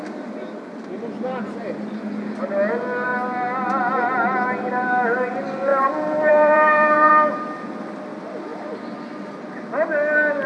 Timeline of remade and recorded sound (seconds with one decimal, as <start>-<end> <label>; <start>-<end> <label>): 0.0-5.7 recorded; 5.7-7.1 remade; 7.1-8.5 recorded; 8.5-9.3 remade; 9.3-10.5 recorded